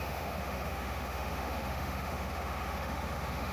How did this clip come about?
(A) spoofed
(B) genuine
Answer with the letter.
A